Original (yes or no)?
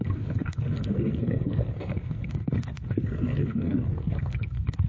no